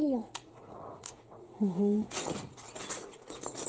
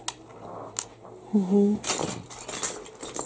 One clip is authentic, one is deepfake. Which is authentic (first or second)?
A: second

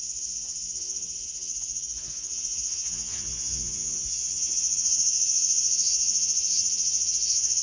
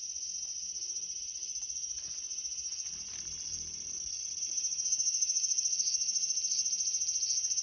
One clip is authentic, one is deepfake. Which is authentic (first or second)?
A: second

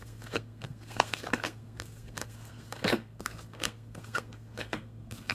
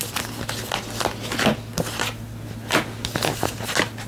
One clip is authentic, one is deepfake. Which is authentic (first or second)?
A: second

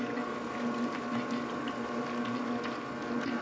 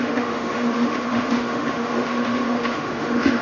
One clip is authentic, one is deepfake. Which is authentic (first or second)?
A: first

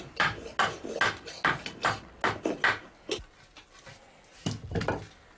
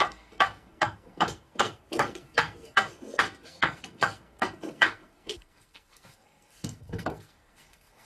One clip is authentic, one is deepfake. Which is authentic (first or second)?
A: first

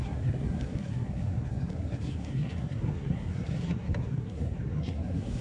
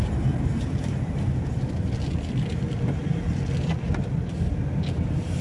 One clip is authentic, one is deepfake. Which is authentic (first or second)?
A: second